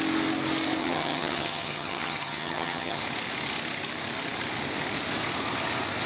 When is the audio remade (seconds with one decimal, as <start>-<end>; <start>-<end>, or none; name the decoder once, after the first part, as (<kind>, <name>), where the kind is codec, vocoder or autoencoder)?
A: 0.8-3.0 (vocoder, HiFi-GAN)